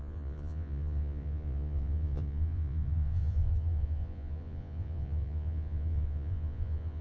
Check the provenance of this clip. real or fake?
fake